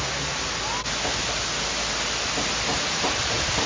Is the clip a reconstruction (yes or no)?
no